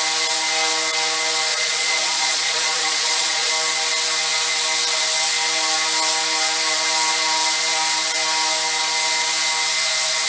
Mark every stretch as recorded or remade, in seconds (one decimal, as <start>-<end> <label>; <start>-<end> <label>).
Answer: 0.0-1.5 recorded; 1.5-3.5 remade; 3.5-10.3 recorded